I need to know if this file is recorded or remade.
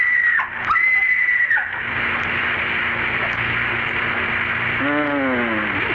recorded